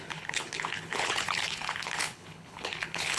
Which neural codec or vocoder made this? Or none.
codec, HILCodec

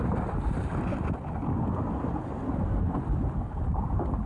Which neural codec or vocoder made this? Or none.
none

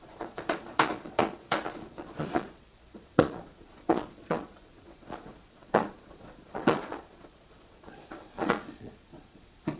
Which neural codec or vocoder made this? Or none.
vocoder, Vocos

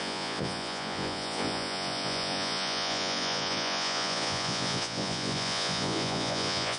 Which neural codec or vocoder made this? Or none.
vocoder, Vocos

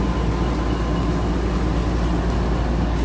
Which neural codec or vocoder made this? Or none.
none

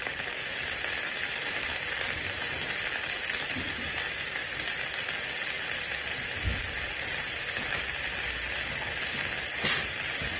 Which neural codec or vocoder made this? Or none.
none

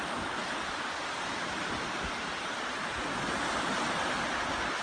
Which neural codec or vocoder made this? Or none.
none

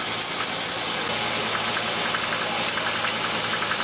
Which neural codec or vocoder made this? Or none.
none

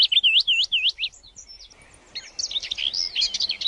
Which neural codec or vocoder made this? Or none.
none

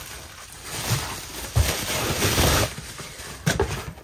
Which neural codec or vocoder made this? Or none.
vocoder, BigVGAN v2